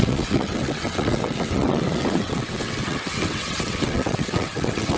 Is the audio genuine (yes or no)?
no